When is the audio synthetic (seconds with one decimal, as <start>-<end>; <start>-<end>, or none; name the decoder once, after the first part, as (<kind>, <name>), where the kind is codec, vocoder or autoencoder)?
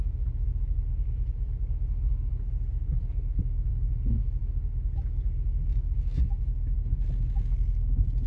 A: none